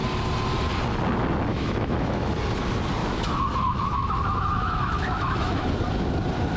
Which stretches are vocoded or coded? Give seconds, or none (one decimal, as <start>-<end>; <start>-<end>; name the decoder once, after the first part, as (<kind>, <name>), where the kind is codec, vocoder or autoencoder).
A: 1.5-2.3 (autoencoder, DAC-VAE); 3.0-5.7